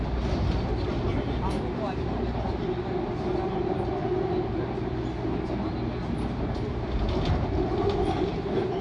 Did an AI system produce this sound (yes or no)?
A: no